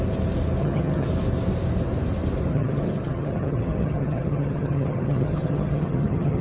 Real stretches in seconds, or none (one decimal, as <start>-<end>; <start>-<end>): 0.0-0.6; 1.1-2.5